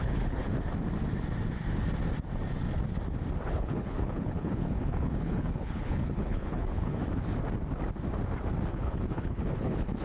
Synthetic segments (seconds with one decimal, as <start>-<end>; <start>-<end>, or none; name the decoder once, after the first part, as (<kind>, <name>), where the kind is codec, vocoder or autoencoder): 0.0-0.4 (codec, HILCodec); 3.5-7.0; 8.7-10.0